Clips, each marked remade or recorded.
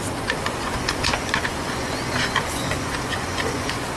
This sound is remade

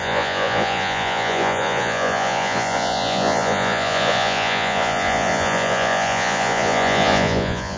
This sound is remade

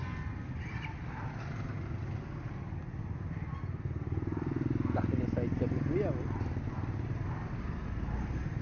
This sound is recorded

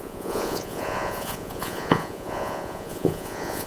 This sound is remade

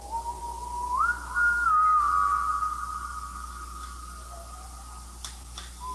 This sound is recorded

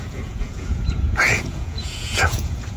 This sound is remade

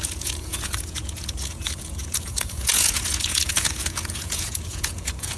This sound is remade